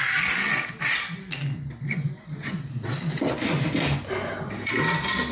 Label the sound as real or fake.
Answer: real